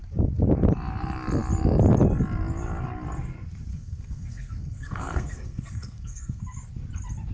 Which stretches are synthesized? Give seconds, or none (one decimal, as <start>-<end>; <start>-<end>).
3.7-6.4